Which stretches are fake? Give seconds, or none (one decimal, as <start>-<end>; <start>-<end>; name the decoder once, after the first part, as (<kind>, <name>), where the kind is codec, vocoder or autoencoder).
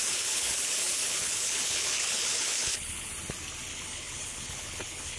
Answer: 0.0-3.1 (codec, HILCodec); 3.7-5.2